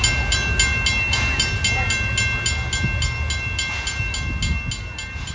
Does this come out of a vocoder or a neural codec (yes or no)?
no